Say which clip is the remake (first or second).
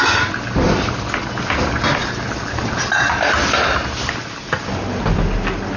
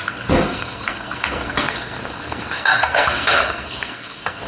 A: second